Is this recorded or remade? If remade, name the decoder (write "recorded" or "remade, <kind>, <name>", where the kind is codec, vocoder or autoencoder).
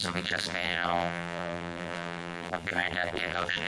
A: remade, vocoder, BigVGAN v2